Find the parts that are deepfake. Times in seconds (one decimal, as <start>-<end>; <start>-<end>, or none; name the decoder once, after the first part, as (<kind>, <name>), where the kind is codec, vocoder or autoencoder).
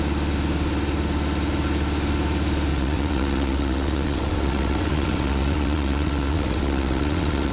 2.7-7.5 (vocoder, WaveNeXt)